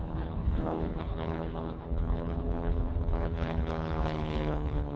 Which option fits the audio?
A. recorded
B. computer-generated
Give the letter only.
B